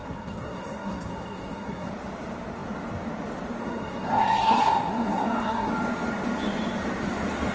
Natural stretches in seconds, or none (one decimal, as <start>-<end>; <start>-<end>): 1.9-3.6; 5.7-7.5